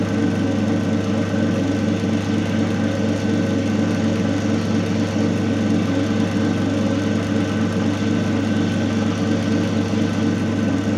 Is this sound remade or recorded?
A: recorded